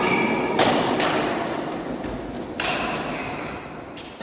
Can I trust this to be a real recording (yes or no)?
yes